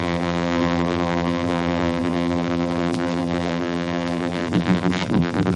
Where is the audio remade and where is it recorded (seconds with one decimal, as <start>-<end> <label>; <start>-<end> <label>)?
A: 0.0-5.6 remade